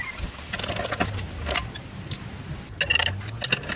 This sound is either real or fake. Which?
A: real